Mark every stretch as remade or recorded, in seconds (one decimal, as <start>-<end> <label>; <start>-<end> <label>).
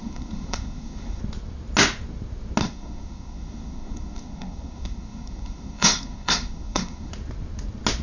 0.0-1.2 remade; 1.2-2.6 recorded; 2.6-7.1 remade; 7.1-8.0 recorded